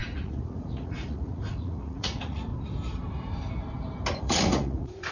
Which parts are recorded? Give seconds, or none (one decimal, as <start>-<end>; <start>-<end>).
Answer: 2.5-4.2